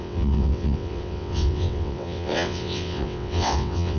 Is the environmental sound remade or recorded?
remade